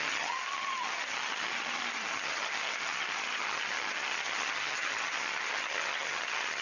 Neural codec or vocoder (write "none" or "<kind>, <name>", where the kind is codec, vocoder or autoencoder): vocoder, HiFi-GAN